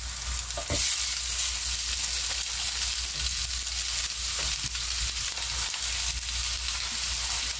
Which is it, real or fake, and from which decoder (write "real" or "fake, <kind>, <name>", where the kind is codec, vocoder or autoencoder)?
real